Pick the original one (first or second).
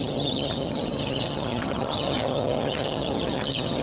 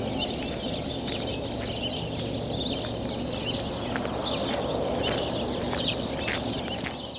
second